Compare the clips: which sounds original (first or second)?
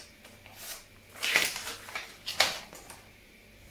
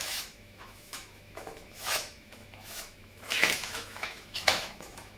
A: first